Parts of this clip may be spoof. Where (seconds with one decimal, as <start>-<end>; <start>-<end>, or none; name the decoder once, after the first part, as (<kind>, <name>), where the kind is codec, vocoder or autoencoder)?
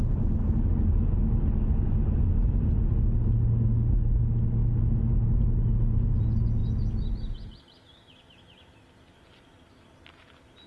none